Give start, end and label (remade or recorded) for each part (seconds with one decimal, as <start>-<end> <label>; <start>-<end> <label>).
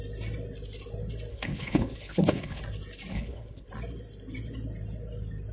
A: 0.0-1.3 recorded; 1.3-2.6 remade; 2.6-3.1 recorded; 3.1-3.7 remade; 3.7-5.5 recorded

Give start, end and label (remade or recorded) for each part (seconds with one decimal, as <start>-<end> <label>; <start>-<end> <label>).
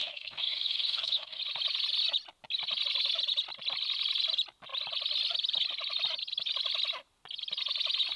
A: 0.0-1.4 remade; 1.4-8.2 recorded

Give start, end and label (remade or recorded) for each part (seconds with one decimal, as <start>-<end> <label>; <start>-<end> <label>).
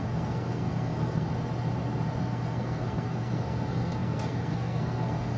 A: 0.0-1.3 remade; 1.3-2.2 recorded; 2.2-5.4 remade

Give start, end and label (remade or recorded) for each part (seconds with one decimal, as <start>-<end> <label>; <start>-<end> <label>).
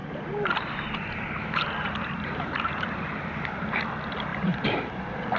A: 0.0-3.2 remade; 3.2-4.3 recorded; 4.3-4.9 remade; 4.9-5.4 recorded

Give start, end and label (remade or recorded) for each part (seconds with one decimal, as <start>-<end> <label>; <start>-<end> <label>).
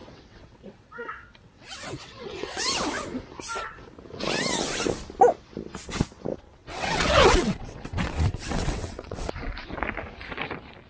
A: 0.0-2.6 remade; 2.6-6.6 recorded; 6.6-9.3 remade; 9.3-10.9 recorded